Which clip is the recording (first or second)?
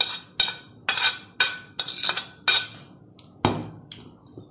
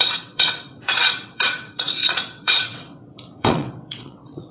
first